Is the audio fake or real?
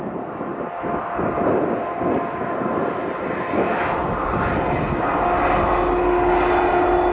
real